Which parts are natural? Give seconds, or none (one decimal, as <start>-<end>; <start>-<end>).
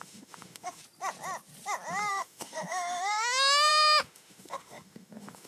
0.8-2.1